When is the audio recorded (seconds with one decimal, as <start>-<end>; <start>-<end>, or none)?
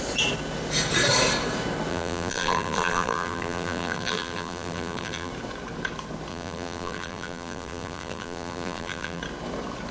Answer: 0.0-1.9; 5.3-6.3; 9.2-9.9